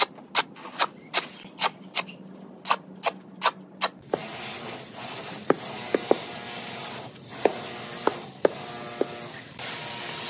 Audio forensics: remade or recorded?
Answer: recorded